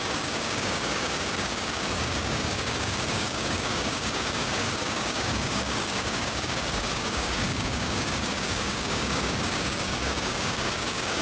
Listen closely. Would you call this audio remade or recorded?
remade